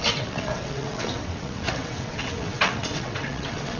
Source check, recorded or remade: remade